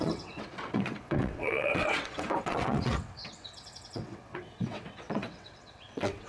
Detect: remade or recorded remade